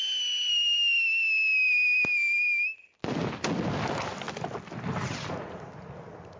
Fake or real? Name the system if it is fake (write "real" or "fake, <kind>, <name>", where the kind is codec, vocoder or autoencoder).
real